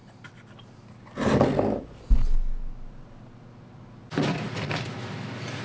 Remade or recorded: recorded